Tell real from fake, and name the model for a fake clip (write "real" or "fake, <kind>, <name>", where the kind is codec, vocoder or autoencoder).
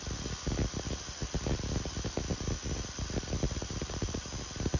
real